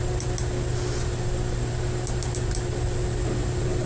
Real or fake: real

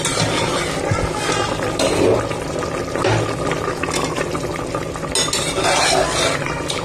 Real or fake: real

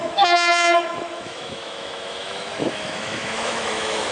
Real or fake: fake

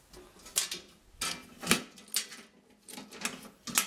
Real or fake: real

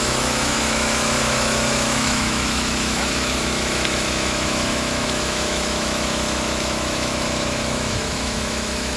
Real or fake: fake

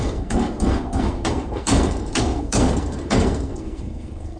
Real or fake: fake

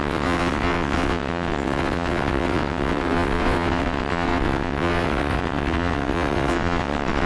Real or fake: fake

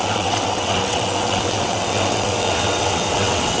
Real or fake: fake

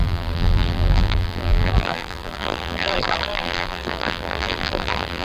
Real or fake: fake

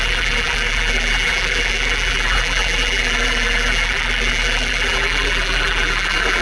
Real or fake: fake